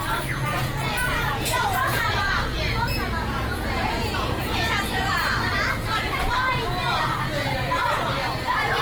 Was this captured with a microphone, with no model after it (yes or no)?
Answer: no